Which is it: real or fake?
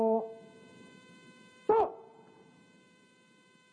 fake